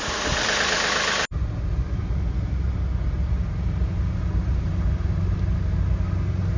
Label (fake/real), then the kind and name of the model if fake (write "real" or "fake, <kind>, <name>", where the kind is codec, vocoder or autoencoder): real